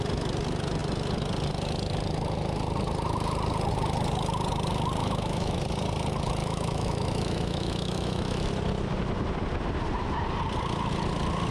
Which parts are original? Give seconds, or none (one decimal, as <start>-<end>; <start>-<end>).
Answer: 0.0-5.0; 5.6-6.4; 8.5-11.5